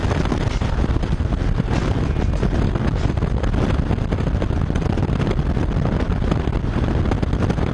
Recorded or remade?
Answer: recorded